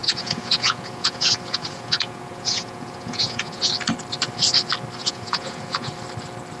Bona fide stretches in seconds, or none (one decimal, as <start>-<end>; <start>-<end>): 3.7-5.0; 5.9-6.6

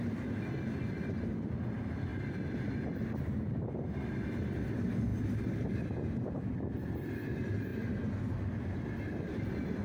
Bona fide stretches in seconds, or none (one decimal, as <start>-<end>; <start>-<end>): 0.0-9.8

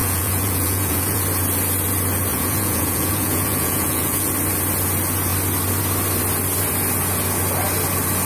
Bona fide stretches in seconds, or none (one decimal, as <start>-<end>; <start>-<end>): 1.2-2.3; 4.3-8.3

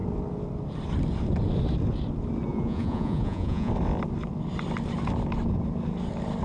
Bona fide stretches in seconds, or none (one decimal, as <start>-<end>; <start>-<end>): 0.0-2.5; 3.7-6.4

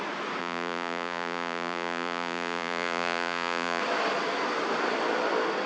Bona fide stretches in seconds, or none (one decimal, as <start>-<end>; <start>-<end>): 0.0-0.4; 3.8-5.7

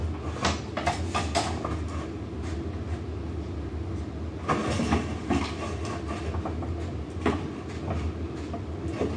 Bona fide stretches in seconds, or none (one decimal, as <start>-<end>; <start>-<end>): 0.0-9.2

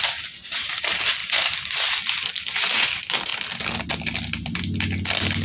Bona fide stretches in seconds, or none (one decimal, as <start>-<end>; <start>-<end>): 0.0-5.4